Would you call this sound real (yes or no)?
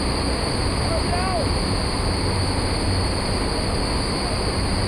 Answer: yes